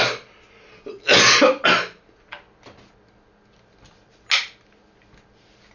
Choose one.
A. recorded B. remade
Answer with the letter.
A